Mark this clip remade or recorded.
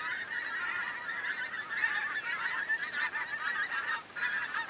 recorded